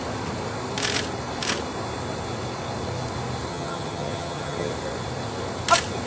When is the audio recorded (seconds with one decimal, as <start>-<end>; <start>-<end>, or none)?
0.0-3.5; 4.7-6.1